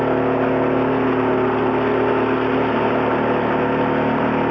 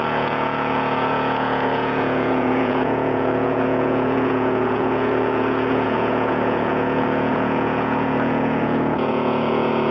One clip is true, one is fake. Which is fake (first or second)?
second